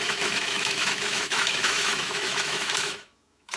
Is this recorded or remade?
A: remade